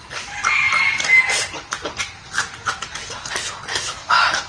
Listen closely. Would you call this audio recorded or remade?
recorded